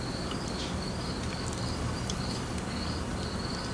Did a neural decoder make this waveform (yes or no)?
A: no